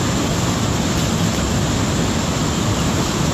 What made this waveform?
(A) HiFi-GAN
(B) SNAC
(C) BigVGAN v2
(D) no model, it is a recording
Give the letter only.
D